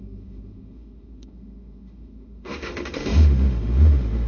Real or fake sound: fake